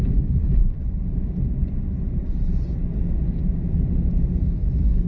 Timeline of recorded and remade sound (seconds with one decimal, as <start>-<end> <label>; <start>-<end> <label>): 0.0-0.6 recorded; 0.6-2.9 remade; 2.9-5.1 recorded